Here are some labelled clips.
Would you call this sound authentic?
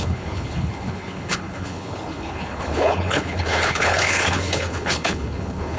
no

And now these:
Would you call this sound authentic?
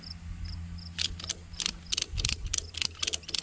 yes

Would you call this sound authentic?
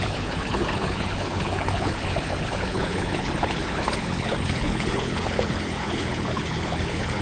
no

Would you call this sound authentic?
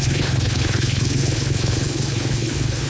no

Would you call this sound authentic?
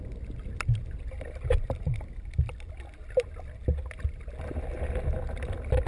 yes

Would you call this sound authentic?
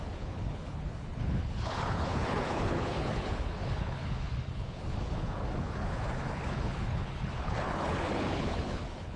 no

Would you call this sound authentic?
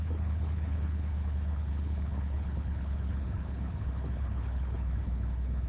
no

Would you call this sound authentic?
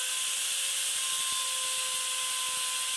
yes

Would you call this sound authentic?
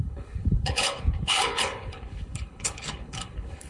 no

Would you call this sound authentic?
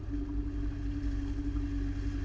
yes